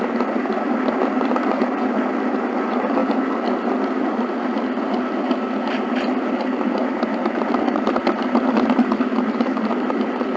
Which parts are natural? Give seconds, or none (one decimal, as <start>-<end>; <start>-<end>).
0.0-10.4

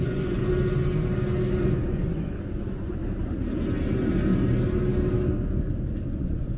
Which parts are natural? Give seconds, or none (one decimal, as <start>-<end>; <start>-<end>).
0.4-1.6; 3.0-6.1

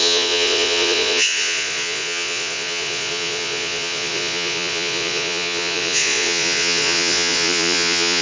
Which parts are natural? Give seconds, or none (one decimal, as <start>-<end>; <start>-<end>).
none

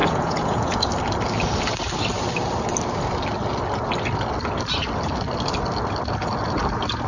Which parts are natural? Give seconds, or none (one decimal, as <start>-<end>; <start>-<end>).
0.9-7.1

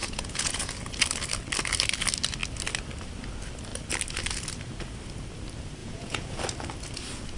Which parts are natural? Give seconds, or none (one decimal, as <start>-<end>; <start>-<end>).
0.7-5.8; 6.4-7.4